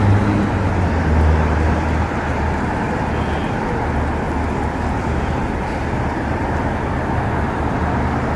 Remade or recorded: recorded